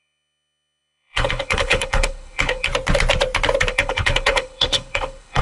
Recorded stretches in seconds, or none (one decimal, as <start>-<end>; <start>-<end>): 2.7-3.7